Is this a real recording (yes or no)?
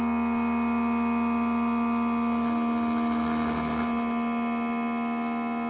yes